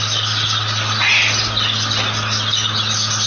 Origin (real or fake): real